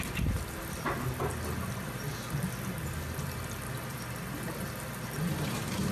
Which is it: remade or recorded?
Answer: recorded